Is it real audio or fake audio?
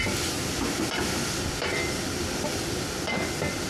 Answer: real